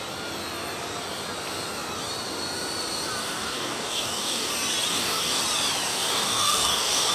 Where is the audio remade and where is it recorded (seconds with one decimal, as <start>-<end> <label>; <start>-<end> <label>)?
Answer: 0.0-3.2 recorded; 3.2-4.5 remade; 4.5-4.9 recorded; 4.9-5.4 remade; 5.4-5.9 recorded; 5.9-7.1 remade